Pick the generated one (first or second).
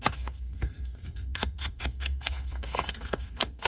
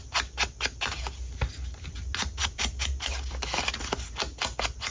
first